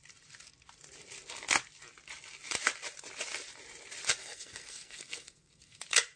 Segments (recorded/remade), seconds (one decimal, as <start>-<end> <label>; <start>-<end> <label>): 0.0-4.2 recorded; 4.2-5.8 remade; 5.8-6.2 recorded